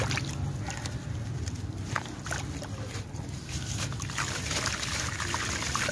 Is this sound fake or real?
real